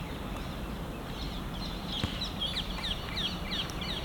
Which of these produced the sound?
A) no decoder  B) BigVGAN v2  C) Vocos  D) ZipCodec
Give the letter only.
A